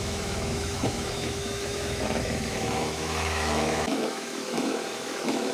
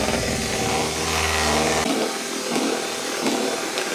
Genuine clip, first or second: second